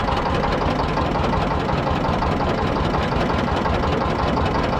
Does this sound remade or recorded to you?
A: recorded